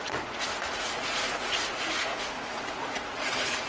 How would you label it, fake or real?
fake